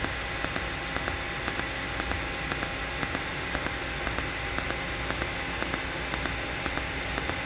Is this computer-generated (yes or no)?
no